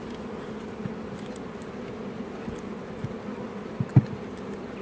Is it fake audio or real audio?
real